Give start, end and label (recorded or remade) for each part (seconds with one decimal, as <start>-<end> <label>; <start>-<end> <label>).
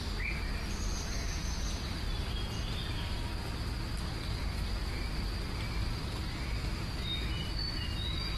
0.0-8.4 recorded